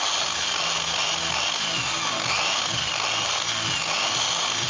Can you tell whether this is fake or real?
real